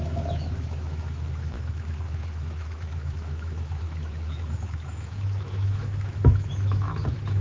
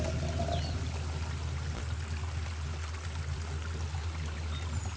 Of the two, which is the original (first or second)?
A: second